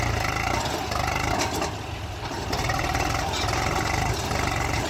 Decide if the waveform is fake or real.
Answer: real